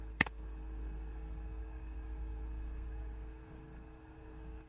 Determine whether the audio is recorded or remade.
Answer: remade